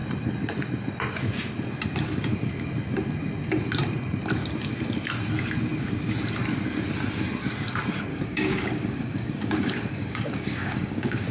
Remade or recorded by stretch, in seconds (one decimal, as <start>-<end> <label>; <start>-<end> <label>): 0.0-8.1 recorded; 8.1-11.3 remade